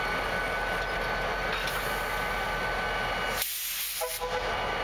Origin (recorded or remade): recorded